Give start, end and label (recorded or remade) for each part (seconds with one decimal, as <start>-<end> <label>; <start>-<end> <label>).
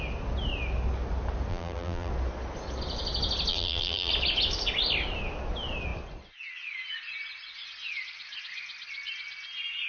0.0-1.5 recorded; 1.5-2.1 remade; 2.1-3.5 recorded; 3.5-4.1 remade; 4.1-9.9 recorded